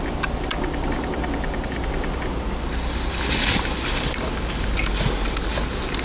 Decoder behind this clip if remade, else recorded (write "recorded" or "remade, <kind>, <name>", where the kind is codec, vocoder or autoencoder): recorded